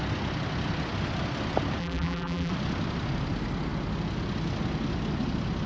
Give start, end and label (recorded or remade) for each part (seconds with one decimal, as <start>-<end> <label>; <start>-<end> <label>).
0.0-1.8 recorded; 1.8-2.5 remade; 2.5-5.7 recorded